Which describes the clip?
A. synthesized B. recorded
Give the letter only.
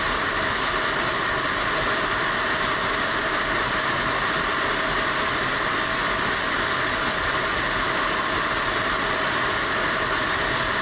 B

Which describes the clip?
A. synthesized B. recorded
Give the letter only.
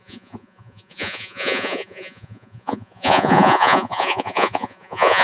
A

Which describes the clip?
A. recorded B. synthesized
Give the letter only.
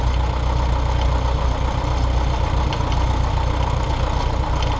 A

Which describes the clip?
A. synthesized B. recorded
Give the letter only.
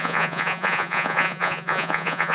A